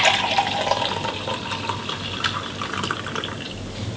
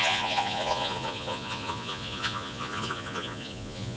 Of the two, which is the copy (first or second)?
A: second